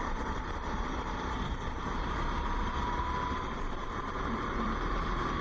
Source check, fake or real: fake